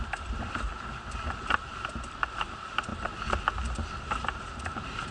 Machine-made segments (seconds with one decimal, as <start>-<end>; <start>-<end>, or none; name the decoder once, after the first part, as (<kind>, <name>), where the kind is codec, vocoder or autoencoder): 0.0-0.7 (vocoder, BigVGAN v2); 2.4-2.9; 4.0-5.1

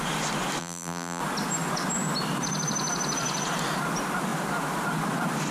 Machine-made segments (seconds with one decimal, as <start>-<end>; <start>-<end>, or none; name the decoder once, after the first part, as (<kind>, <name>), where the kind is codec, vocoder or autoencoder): 0.6-1.2 (vocoder, BigVGAN v2)

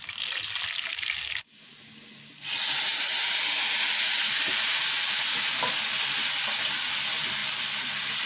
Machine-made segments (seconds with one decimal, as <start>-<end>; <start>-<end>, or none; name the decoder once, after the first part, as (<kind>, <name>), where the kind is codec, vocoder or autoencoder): none